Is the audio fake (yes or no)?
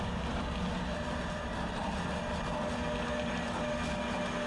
no